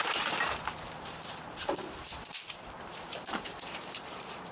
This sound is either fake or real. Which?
fake